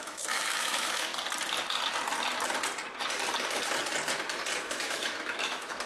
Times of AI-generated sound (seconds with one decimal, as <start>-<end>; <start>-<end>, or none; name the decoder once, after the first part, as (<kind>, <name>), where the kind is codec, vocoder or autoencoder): 0.0-1.1 (autoencoder, DAC-VAE); 4.6-5.9